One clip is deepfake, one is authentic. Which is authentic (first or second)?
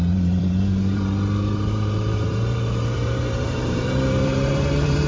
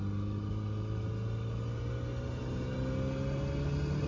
second